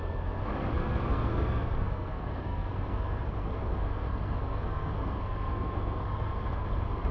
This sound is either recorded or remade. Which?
remade